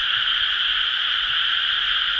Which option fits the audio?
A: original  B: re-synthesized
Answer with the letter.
A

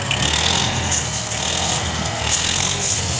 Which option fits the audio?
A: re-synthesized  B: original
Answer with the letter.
A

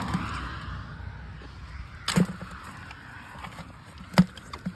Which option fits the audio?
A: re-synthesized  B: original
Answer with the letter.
B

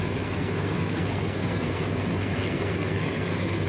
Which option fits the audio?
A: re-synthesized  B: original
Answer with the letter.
A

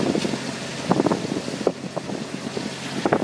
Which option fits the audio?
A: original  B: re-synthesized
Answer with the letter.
A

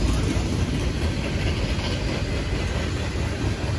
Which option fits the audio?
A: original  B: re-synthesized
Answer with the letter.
A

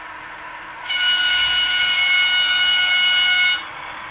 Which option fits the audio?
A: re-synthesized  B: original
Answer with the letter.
B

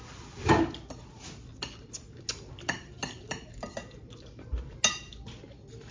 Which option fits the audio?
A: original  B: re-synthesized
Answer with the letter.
A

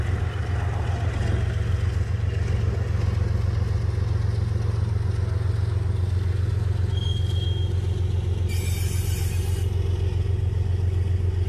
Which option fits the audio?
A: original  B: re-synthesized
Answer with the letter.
A